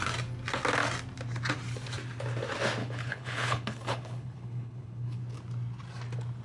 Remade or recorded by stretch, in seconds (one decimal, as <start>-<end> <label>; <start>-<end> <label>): 0.0-2.8 recorded; 2.8-5.2 remade; 5.2-6.4 recorded